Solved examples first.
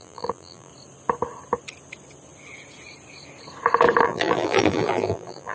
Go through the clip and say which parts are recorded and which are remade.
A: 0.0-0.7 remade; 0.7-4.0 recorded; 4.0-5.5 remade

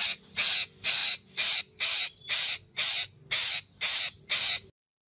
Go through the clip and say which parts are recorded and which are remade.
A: 0.0-1.0 recorded; 1.0-1.6 remade; 1.6-5.1 recorded